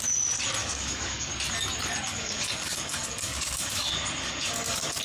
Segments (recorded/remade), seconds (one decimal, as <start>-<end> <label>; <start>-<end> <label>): 0.0-0.6 recorded; 0.6-1.3 remade; 1.3-2.1 recorded; 2.1-5.0 remade